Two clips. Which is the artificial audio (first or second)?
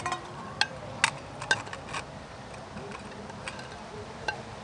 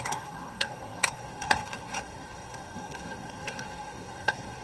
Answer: second